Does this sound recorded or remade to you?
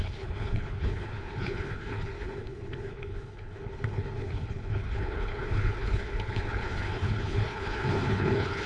remade